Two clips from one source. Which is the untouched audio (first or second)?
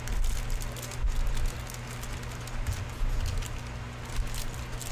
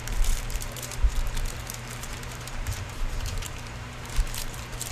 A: first